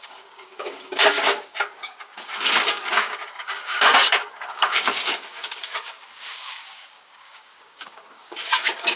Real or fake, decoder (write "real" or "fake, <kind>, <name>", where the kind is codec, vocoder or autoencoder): fake, codec, DAC